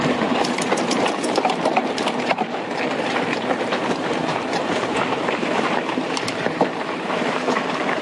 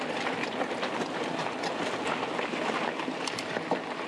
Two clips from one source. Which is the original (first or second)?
second